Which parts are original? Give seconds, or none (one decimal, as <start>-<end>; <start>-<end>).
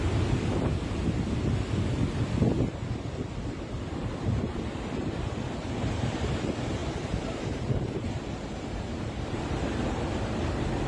0.0-6.8; 9.4-10.9